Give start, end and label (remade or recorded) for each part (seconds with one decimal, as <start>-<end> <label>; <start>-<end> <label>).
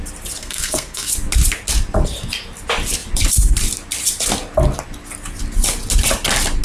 0.0-0.4 recorded; 0.4-1.1 remade; 1.1-6.6 recorded